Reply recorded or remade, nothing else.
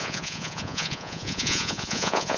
remade